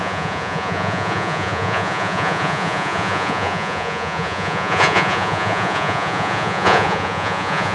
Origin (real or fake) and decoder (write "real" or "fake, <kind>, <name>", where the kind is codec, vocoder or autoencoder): fake, vocoder, Vocos